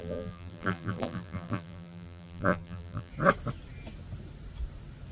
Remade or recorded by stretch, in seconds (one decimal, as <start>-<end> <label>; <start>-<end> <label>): 0.0-3.1 remade; 3.1-5.1 recorded